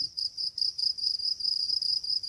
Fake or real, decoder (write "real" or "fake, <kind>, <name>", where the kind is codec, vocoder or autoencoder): fake, vocoder, BigVGAN v2